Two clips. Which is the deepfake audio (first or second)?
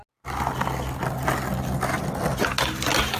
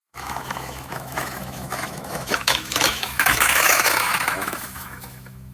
second